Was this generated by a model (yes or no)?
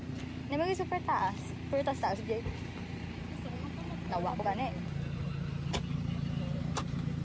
no